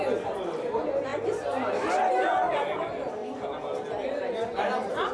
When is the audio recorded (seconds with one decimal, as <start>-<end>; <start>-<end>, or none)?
0.0-5.1